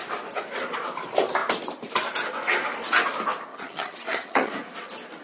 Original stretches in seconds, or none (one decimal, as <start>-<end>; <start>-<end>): 0.0-3.5; 4.5-5.2